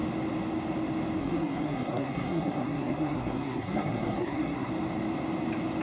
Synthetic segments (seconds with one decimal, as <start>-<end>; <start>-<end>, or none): 1.2-4.7